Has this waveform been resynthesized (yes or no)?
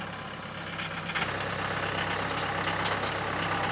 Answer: no